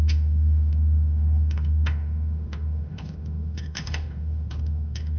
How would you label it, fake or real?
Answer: fake